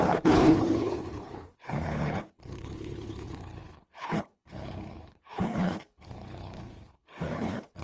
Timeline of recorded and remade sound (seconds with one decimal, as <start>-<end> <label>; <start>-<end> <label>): 0.0-7.8 remade